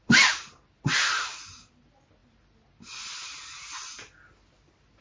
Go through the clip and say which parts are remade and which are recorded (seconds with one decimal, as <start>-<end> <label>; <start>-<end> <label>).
0.0-5.0 recorded